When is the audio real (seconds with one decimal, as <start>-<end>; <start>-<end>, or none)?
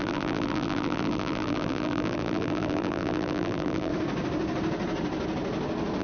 3.9-6.0